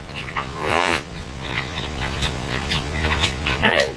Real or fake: fake